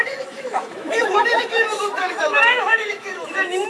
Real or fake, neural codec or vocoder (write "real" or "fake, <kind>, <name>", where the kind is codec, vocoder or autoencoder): fake, autoencoder, DAC-VAE